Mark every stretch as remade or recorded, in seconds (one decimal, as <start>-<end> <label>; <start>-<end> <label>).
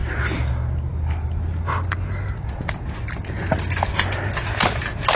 0.0-5.2 recorded